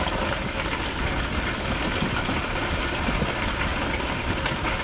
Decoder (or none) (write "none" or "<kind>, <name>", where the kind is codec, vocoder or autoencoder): none